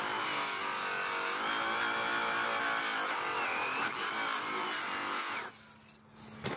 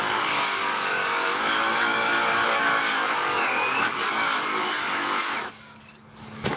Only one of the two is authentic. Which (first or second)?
first